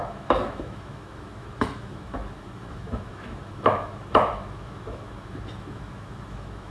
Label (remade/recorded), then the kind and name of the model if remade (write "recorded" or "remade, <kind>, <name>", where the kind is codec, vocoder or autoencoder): remade, autoencoder, DAC-VAE